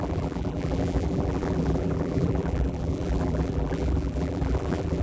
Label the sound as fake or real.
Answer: fake